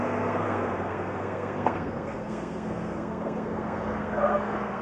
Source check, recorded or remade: remade